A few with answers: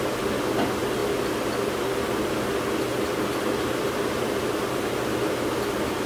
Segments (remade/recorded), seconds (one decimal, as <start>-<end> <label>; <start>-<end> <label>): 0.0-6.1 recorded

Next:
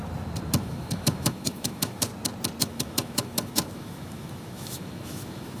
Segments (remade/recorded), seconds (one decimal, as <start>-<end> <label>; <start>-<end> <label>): 0.0-0.6 recorded; 0.6-2.1 remade; 2.1-2.6 recorded; 2.6-5.6 remade

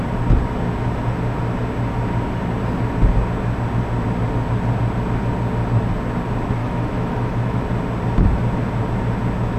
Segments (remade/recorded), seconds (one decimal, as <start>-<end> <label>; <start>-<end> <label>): 0.0-6.6 recorded; 6.6-7.6 remade; 7.6-9.6 recorded

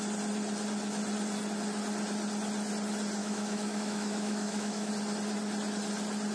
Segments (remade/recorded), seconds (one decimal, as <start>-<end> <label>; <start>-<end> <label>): 0.0-3.2 recorded; 3.2-4.9 remade; 4.9-6.3 recorded

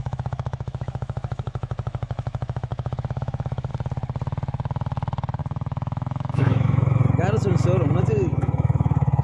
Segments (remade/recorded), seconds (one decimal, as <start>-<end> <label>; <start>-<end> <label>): 0.0-3.7 remade; 3.7-5.4 recorded; 5.4-7.0 remade; 7.0-8.0 recorded; 8.0-9.2 remade

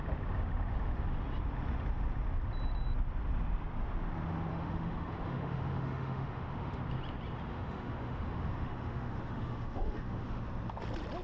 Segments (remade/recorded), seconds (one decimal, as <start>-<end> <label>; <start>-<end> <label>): 0.0-4.5 recorded; 4.5-6.8 remade; 6.8-7.5 recorded; 7.5-10.4 remade; 10.4-11.2 recorded

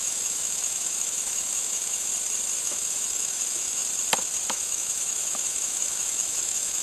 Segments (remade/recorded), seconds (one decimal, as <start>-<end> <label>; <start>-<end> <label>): 0.0-2.1 remade; 2.1-2.6 recorded; 2.6-3.8 remade; 3.8-4.5 recorded; 4.5-6.8 remade

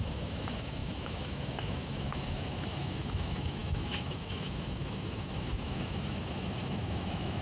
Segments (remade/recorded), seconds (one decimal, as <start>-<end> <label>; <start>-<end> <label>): 0.0-7.4 remade